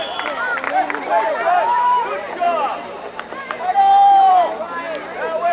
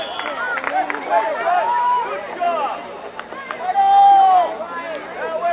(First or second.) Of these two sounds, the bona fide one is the second